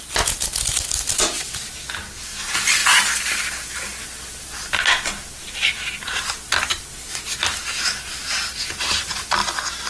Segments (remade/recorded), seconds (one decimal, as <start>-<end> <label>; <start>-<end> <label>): 0.0-9.9 recorded